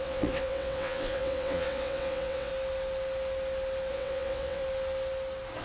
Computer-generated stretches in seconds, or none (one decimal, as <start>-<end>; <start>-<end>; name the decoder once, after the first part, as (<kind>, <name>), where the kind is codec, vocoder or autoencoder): 0.0-2.5 (vocoder, WaveNeXt); 3.9-4.6